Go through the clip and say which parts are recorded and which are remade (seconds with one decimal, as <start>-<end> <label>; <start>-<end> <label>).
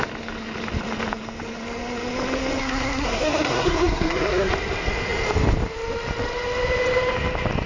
0.0-2.6 recorded; 2.6-4.5 remade; 4.5-7.7 recorded